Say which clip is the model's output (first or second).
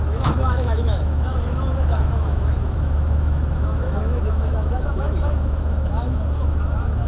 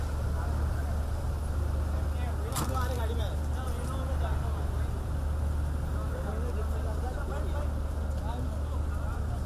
first